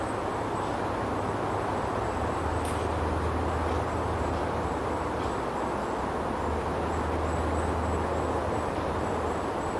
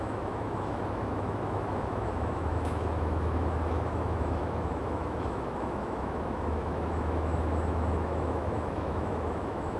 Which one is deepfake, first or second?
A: second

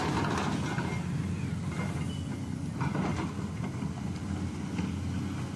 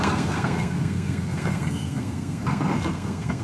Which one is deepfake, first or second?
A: second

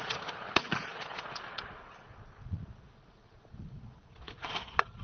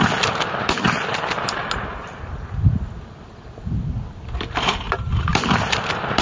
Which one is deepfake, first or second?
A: first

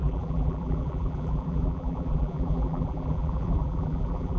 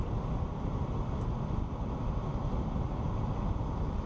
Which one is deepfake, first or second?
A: first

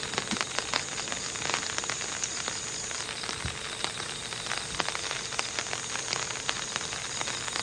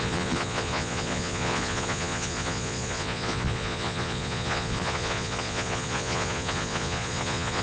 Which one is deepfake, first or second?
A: second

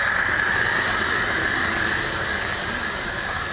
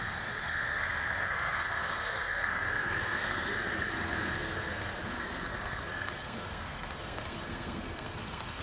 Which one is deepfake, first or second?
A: second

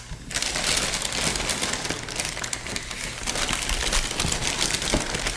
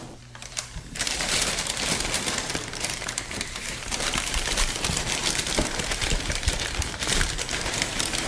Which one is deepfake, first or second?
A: second